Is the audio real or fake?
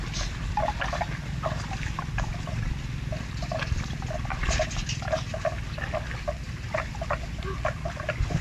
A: real